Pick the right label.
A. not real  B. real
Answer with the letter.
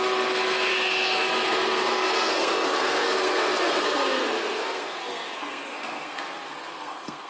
A